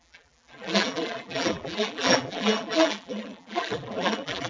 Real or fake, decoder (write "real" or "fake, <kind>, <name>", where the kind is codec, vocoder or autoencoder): fake, vocoder, BigVGAN v2